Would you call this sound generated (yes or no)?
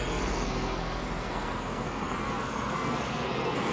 yes